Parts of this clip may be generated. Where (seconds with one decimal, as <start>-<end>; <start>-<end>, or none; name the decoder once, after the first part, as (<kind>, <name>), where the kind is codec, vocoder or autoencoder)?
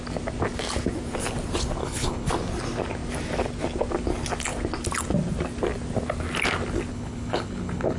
1.8-2.3 (codec, HILCodec); 6.9-8.0